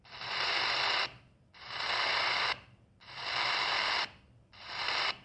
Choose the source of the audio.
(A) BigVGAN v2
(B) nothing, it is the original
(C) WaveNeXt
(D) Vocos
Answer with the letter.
A